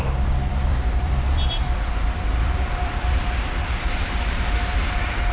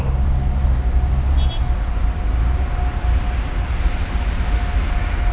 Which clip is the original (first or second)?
second